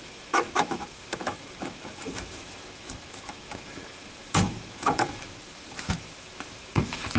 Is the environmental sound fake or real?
fake